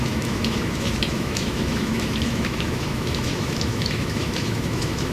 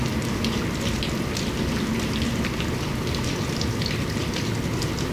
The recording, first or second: second